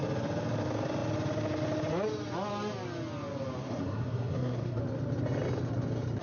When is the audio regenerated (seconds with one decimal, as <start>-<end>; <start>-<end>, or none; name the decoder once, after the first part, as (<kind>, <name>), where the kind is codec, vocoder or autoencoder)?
3.6-4.8 (codec, SNAC)